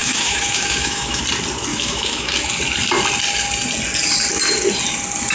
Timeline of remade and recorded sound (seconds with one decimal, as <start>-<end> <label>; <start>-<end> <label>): 0.0-1.2 remade; 1.2-1.7 recorded; 1.7-2.3 remade; 2.3-5.3 recorded